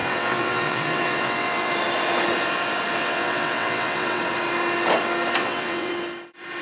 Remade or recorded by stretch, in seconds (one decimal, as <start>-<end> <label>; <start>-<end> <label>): 0.0-1.7 remade; 1.7-3.0 recorded; 3.0-4.2 remade; 4.2-5.4 recorded; 5.4-5.9 remade; 5.9-6.6 recorded